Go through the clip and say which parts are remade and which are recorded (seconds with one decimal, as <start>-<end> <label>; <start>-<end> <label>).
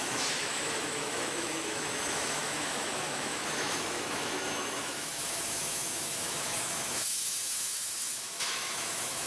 0.0-9.3 remade